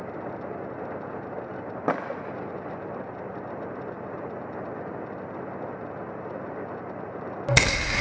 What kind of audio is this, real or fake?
real